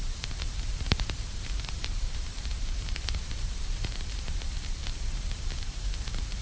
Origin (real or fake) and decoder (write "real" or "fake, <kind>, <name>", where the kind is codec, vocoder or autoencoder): fake, vocoder, BigVGAN v2